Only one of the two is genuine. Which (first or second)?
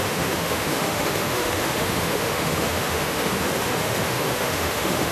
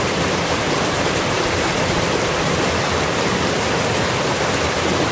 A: second